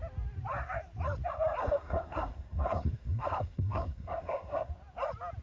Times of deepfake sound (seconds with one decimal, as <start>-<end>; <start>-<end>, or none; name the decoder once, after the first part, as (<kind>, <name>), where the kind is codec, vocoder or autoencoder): 1.6-4.7 (codec, SNAC)